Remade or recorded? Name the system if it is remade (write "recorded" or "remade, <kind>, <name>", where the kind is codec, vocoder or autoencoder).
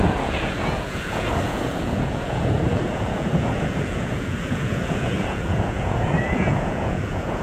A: remade, vocoder, Vocos